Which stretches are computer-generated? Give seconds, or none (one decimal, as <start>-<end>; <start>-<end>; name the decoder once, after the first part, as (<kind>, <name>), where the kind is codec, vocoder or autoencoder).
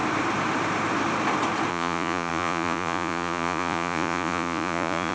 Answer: 1.7-5.1 (vocoder, Vocos)